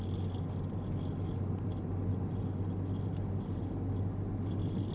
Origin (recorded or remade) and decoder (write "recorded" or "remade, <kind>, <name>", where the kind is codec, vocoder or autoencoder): recorded